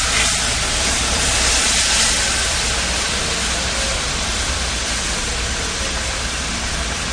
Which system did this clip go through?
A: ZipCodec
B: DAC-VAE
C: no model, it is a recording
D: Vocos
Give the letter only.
C